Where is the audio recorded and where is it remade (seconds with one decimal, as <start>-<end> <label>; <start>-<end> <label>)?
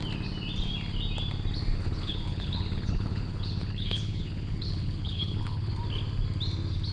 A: 0.0-1.8 recorded; 1.8-5.7 remade; 5.7-6.9 recorded